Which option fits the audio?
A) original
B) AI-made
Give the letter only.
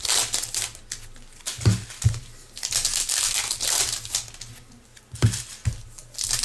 A